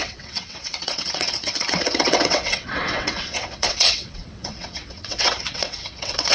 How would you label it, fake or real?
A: fake